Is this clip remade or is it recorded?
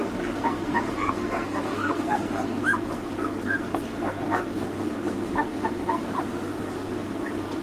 remade